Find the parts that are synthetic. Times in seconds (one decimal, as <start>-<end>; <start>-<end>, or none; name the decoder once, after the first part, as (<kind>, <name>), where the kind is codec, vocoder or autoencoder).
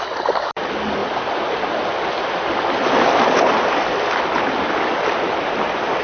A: none